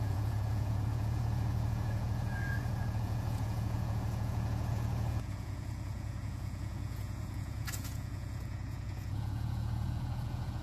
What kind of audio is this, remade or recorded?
remade